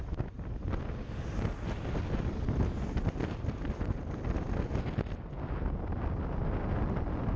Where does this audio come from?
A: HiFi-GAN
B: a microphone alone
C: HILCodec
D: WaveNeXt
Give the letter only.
B